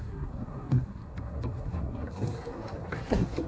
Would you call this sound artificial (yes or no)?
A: yes